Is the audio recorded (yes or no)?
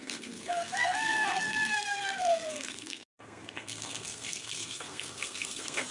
no